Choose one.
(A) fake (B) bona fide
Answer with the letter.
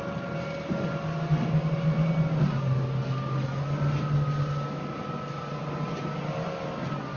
B